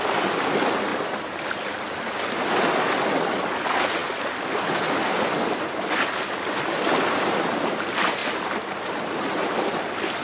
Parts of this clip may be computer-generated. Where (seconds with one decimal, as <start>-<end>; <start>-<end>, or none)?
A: none